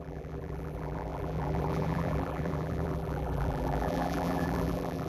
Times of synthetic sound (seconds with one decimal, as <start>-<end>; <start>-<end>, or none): 0.0-5.1